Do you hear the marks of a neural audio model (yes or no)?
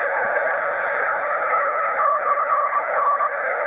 yes